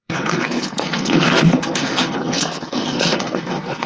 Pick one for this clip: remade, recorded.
remade